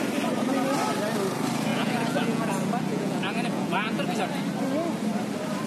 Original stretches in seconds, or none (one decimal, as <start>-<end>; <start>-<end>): 0.0-1.7; 2.5-2.9; 4.2-5.7